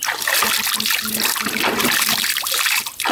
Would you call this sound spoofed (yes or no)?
no